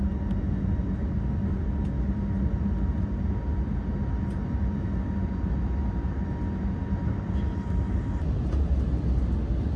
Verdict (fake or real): real